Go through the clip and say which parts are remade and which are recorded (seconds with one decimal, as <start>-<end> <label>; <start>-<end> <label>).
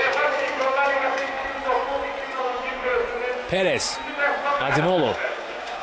0.0-1.4 remade; 1.4-2.4 recorded; 2.4-2.9 remade; 2.9-4.5 recorded; 4.5-5.8 remade